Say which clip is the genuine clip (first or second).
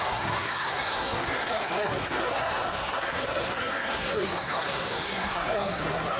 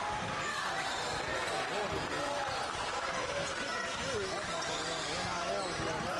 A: second